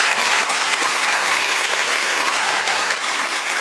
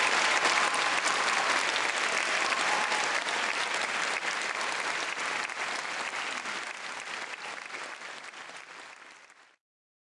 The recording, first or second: second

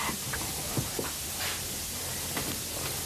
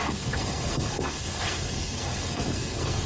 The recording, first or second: first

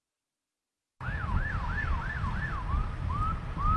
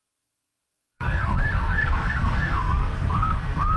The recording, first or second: first